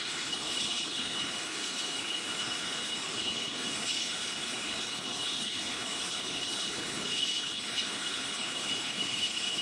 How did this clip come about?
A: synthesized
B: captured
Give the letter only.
A